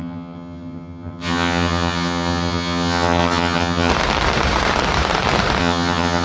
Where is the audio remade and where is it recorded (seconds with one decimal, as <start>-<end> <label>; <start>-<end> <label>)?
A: 0.0-3.9 remade; 3.9-5.6 recorded; 5.6-6.2 remade